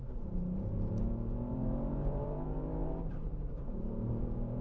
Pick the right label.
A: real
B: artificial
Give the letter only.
B